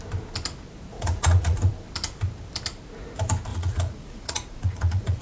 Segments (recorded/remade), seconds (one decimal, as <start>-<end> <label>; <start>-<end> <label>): 0.0-0.9 recorded; 0.9-1.7 remade; 1.7-3.5 recorded; 3.5-5.2 remade